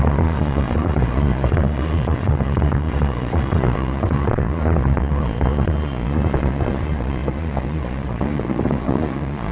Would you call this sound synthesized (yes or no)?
yes